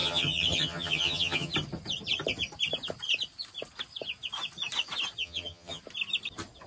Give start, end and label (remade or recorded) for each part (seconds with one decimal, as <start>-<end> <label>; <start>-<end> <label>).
0.0-1.5 remade; 1.5-5.2 recorded; 5.2-5.8 remade; 5.8-6.7 recorded